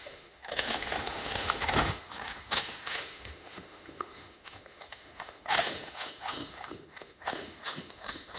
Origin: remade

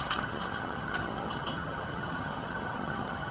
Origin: remade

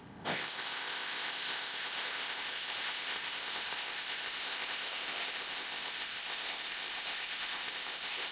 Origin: remade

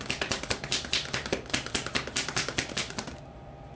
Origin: remade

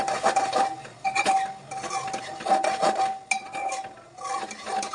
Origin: recorded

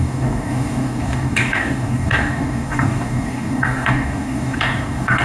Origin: remade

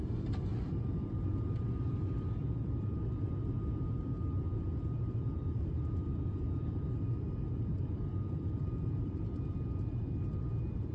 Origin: remade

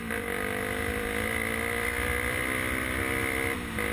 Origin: recorded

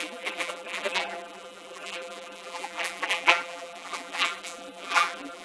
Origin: remade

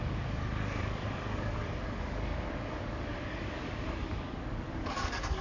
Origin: remade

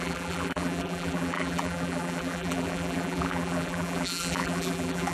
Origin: remade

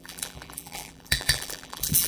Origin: remade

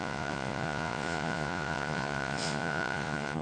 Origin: remade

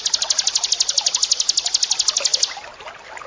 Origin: recorded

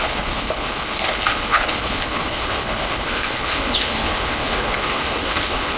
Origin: remade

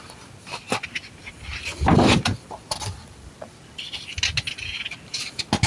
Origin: recorded